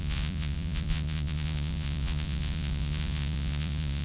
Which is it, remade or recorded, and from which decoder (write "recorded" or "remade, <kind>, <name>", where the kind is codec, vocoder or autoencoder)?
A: remade, vocoder, Vocos